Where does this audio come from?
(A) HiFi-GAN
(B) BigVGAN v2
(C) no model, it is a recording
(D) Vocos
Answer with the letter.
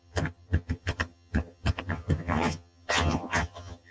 A